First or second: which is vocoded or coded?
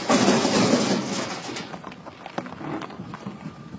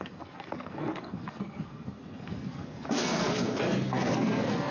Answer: second